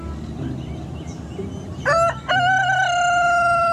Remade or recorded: recorded